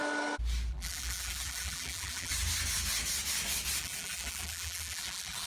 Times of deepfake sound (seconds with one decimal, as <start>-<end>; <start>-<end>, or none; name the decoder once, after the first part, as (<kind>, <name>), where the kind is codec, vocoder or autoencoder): 0.7-2.3 (vocoder, BigVGAN v2); 3.8-5.5